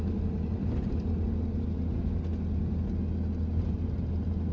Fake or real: real